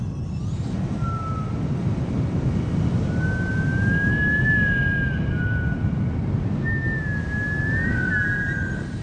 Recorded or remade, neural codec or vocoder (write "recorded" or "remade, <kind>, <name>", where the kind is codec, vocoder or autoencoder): recorded